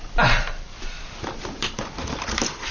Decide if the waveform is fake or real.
fake